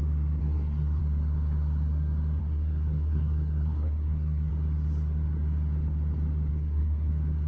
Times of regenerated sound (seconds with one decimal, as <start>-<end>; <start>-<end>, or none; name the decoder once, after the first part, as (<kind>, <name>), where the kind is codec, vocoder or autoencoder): 0.4-1.0 (codec, SNAC); 2.4-4.5; 6.5-7.1